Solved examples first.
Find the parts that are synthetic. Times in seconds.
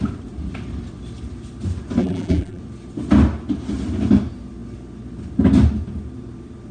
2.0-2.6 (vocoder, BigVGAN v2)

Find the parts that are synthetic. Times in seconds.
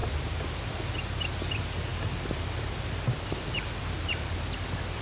0.0-0.8 (vocoder, BigVGAN v2); 1.9-5.0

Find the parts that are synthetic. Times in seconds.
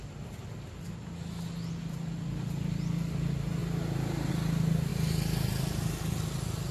3.6-4.3 (vocoder, BigVGAN v2)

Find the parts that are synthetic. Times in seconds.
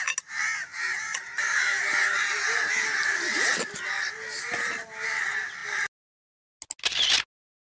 0.7-2.6 (vocoder, BigVGAN v2)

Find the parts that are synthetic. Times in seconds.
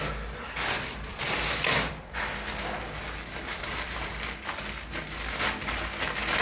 1.1-1.9 (vocoder, BigVGAN v2); 3.5-4.1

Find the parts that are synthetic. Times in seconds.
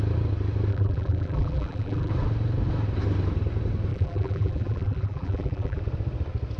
0.7-2.1 (vocoder, BigVGAN v2); 3.9-5.8